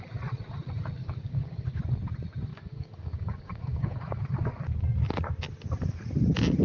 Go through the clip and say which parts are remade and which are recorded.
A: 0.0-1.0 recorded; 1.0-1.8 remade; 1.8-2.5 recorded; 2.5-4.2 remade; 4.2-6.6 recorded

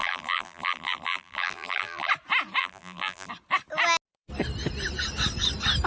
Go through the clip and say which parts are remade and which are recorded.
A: 0.0-2.1 remade; 2.1-2.6 recorded; 2.6-3.3 remade; 3.3-5.9 recorded

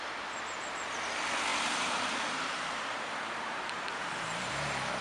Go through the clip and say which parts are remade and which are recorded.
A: 0.0-1.5 recorded; 1.5-4.5 remade; 4.5-5.0 recorded

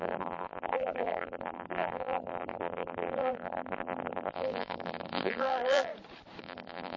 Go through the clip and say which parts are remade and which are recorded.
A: 0.0-5.9 remade; 5.9-6.4 recorded; 6.4-7.0 remade

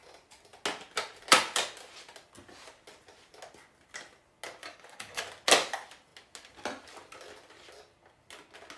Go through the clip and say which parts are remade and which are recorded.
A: 0.0-4.6 recorded; 4.6-5.2 remade; 5.2-8.8 recorded

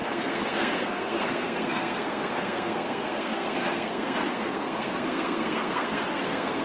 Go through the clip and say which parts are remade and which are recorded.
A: 0.0-6.6 remade